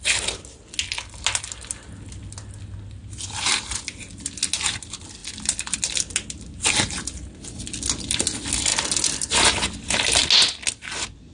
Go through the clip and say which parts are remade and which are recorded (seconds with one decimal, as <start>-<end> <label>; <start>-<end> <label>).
0.0-5.2 recorded; 5.2-6.1 remade; 6.1-8.7 recorded; 8.7-9.3 remade; 9.3-11.3 recorded